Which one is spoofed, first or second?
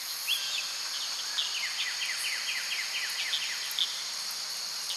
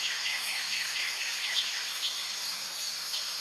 second